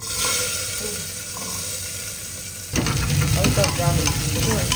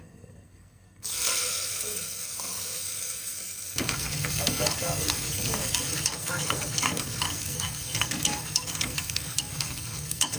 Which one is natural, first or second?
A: first